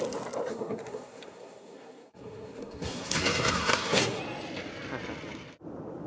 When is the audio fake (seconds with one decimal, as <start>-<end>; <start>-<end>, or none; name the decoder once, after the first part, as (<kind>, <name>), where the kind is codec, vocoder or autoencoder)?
0.5-4.2 (codec, SNAC)